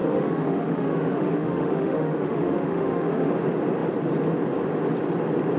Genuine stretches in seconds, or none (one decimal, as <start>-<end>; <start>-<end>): 3.3-5.6